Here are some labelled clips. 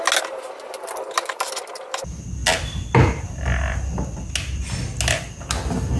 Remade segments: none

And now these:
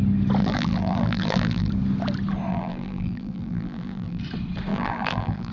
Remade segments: 0.4-1.7 (vocoder, BigVGAN v2); 2.5-4.2; 4.7-5.5

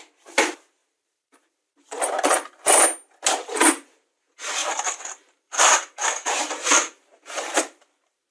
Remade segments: 0.8-2.8 (vocoder, BigVGAN v2); 4.6-8.3

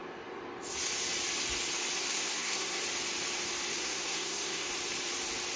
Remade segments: 2.1-2.8 (codec, SNAC); 3.8-4.7